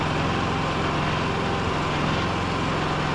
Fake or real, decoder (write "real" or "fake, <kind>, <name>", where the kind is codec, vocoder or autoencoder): real